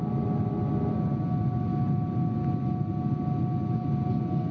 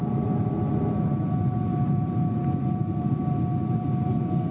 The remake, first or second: second